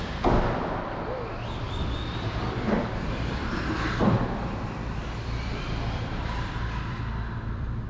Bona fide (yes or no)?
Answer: no